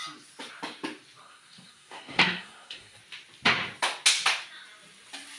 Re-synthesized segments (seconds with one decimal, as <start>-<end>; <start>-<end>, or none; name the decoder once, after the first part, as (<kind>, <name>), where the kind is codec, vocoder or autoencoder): 1.2-3.0 (codec, SNAC)